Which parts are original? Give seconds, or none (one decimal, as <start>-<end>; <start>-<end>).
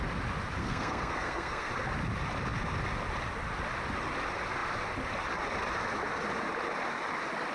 0.0-0.6; 1.7-7.5